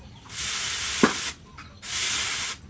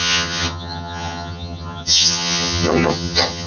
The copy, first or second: second